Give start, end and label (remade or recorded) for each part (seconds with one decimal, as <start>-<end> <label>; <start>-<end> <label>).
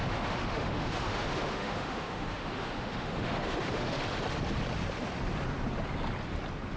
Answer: 0.0-4.0 remade; 4.0-6.8 recorded